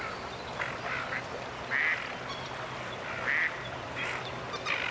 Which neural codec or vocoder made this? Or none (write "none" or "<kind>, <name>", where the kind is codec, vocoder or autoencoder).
none